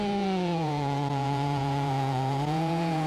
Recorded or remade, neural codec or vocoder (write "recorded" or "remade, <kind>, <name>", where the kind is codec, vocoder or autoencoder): remade, vocoder, Vocos